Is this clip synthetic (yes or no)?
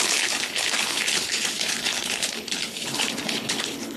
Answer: yes